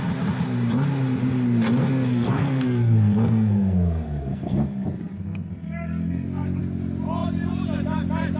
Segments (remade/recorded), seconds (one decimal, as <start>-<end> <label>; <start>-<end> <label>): 0.0-1.8 recorded; 1.8-6.6 remade; 6.6-8.4 recorded